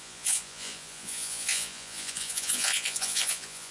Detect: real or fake fake